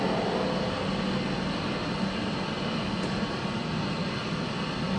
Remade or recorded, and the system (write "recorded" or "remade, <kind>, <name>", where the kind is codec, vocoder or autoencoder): recorded